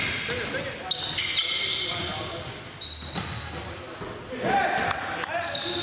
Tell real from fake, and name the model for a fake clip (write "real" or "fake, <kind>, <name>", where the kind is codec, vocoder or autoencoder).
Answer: real